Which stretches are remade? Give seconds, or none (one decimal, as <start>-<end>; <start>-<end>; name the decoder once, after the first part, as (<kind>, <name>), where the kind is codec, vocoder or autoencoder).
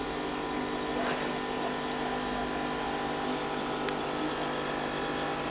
none